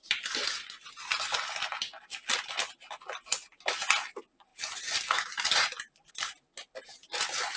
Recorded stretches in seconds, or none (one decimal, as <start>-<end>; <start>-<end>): 0.0-7.6